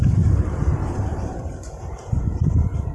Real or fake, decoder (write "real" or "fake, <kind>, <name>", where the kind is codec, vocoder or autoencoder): fake, vocoder, BigVGAN v2